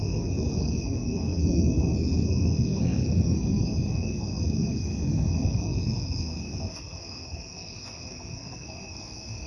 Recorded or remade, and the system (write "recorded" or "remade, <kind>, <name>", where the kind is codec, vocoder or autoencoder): remade, codec, SNAC